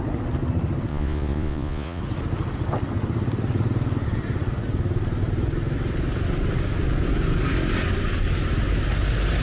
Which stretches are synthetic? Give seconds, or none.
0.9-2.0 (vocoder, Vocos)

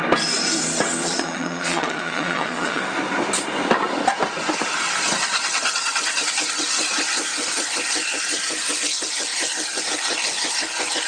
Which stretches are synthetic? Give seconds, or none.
1.0-2.8 (vocoder, Vocos)

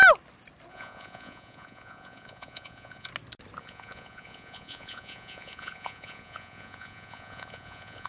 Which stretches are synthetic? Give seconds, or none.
0.7-3.1 (vocoder, Vocos); 3.6-8.1

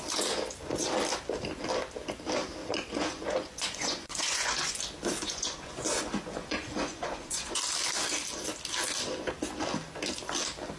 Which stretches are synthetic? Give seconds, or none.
2.6-4.8 (vocoder, Vocos); 5.2-7.6

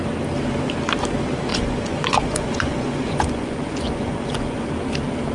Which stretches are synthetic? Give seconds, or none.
1.5-4.7 (vocoder, Vocos)

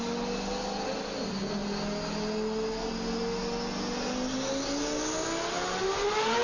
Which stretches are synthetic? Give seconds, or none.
none

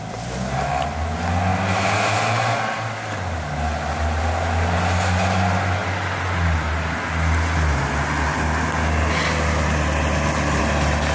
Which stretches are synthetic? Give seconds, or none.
none